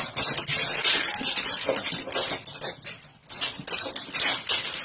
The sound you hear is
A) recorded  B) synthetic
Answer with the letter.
A